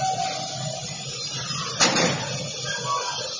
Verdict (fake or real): real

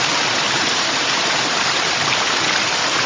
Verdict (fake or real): real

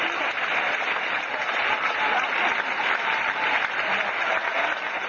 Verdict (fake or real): real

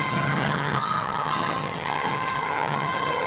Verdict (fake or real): fake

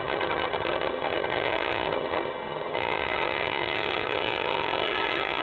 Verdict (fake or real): fake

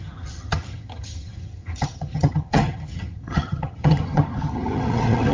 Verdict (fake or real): fake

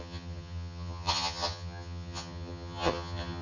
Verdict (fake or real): fake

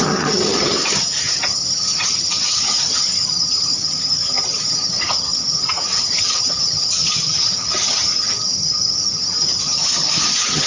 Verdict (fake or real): fake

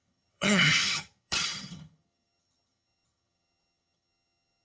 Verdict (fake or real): fake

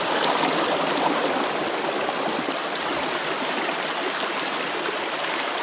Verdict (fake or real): real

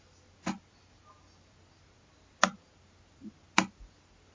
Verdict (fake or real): real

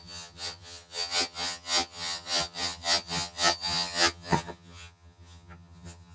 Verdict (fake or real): fake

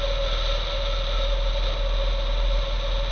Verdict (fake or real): real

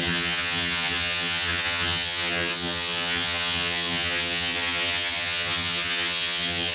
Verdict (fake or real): fake